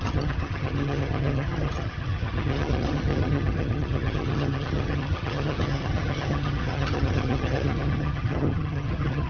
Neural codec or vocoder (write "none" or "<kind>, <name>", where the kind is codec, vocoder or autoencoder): vocoder, HiFi-GAN